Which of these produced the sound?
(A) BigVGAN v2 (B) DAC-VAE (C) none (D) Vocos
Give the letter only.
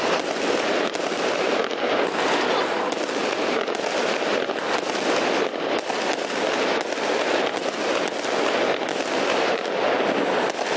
C